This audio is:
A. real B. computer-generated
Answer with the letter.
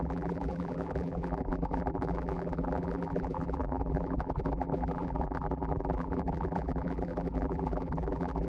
B